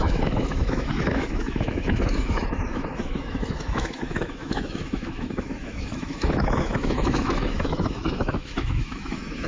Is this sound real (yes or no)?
no